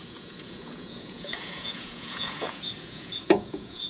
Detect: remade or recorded remade